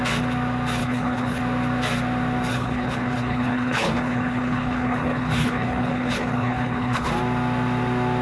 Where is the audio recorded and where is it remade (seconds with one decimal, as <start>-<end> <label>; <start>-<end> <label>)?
0.0-0.8 recorded; 0.8-1.4 remade; 1.4-2.5 recorded; 2.5-7.1 remade; 7.1-8.2 recorded